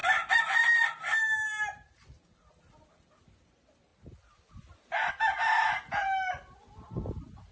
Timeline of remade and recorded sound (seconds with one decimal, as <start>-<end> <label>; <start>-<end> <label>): 0.0-7.5 recorded